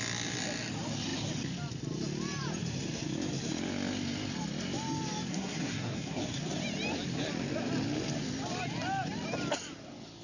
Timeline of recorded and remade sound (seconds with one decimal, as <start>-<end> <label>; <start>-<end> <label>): 0.0-5.3 recorded; 5.3-6.2 remade; 6.2-10.2 recorded